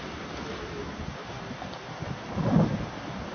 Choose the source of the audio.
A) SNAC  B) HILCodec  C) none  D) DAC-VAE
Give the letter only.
C